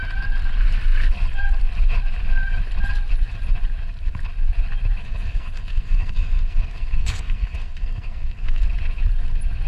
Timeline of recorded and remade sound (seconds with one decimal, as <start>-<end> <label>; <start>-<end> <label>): 0.0-5.0 recorded; 5.0-8.6 remade; 8.6-9.7 recorded